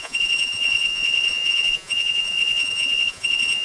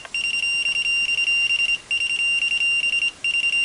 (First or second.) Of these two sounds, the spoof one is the first